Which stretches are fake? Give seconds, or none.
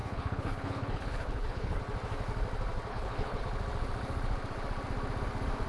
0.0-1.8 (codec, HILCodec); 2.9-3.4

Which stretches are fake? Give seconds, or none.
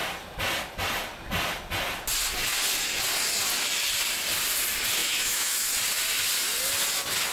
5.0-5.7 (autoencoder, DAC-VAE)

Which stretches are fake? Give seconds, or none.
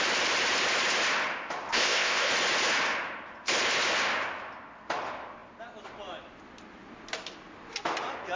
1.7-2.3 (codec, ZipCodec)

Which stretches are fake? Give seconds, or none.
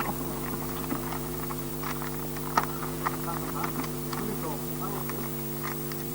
0.0-1.7 (vocoder, Vocos); 2.8-5.0